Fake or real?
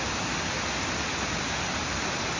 real